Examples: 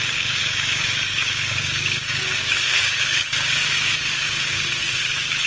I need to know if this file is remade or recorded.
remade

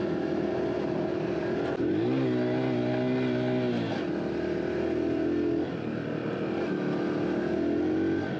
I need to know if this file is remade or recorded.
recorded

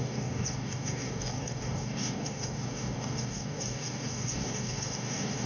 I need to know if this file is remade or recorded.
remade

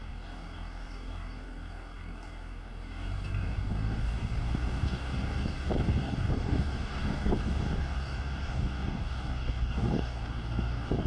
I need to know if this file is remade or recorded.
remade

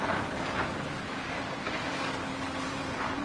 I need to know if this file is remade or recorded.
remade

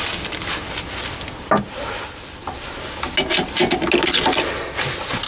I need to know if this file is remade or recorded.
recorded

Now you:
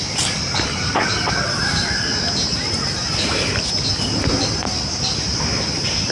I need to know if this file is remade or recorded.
recorded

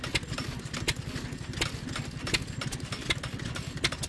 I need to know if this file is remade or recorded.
recorded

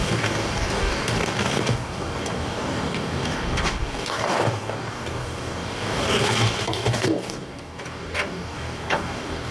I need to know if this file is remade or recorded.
remade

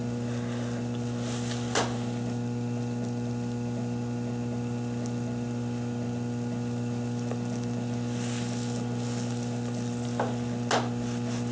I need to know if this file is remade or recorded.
recorded